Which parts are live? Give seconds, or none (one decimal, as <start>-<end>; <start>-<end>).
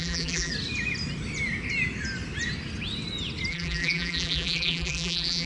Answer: 0.5-3.5